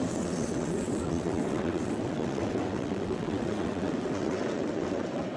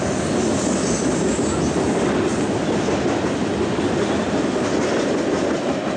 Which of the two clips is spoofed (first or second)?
first